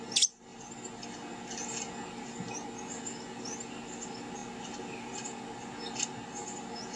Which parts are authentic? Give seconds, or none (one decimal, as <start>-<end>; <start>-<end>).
0.0-7.0